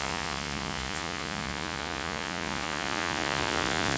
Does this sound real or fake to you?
fake